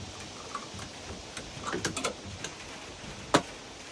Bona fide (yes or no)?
yes